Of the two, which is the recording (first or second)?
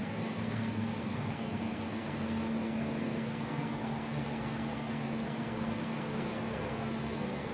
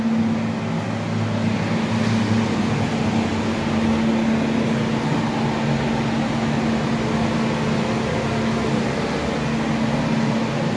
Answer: second